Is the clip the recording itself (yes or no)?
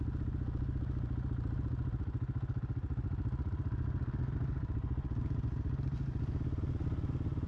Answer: yes